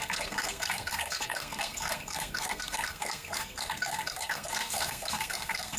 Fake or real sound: fake